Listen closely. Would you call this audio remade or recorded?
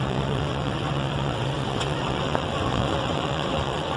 remade